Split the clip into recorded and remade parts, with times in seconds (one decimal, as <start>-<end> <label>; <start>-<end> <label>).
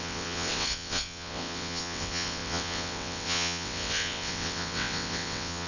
0.0-5.7 remade